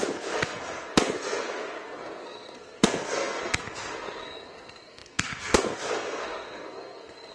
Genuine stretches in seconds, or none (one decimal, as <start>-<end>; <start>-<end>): none